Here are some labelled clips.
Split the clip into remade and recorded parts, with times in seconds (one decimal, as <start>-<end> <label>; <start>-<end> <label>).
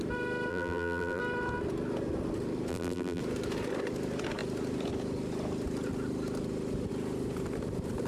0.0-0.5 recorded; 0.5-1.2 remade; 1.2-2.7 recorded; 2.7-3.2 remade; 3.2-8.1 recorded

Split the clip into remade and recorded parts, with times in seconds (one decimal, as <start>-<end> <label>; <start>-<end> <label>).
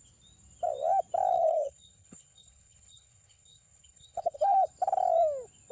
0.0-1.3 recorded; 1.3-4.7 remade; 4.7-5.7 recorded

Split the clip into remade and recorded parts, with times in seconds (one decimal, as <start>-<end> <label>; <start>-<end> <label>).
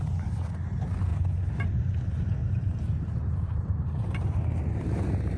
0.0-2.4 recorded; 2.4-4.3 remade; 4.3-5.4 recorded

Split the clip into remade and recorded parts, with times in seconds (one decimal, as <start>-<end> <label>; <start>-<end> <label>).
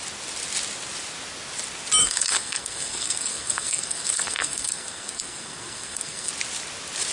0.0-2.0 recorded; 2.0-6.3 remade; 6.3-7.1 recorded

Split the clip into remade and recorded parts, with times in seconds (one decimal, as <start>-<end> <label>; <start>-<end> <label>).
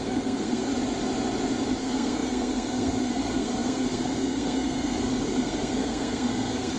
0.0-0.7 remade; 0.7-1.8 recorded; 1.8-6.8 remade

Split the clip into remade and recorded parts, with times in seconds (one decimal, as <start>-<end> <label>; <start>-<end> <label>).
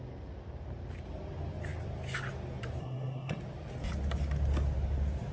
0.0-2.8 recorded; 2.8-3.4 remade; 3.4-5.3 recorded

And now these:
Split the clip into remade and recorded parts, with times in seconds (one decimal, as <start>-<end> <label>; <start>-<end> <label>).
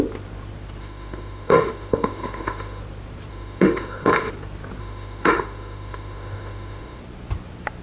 0.0-0.8 recorded; 0.8-2.8 remade; 2.8-3.3 recorded; 3.3-4.3 remade; 4.3-4.8 recorded; 4.8-7.0 remade; 7.0-7.8 recorded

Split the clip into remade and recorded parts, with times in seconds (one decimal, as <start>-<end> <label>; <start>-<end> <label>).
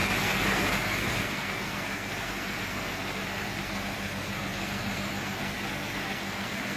0.0-6.8 remade